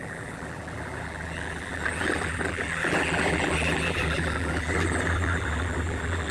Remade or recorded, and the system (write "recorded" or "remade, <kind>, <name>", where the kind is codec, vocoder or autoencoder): remade, vocoder, BigVGAN v2